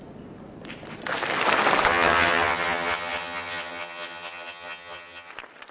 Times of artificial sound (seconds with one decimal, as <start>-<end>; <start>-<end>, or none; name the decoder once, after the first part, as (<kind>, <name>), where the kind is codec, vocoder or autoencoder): 1.9-5.3 (vocoder, HiFi-GAN)